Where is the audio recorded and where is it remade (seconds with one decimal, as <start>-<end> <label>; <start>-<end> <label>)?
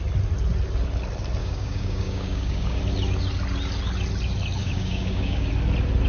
0.0-1.4 recorded; 1.4-2.8 remade; 2.8-4.6 recorded; 4.6-5.5 remade; 5.5-6.1 recorded